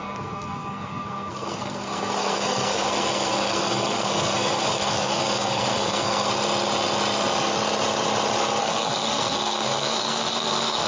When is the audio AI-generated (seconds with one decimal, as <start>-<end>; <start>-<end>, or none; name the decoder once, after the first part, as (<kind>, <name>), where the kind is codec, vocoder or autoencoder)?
0.0-6.3 (codec, SNAC); 8.6-10.9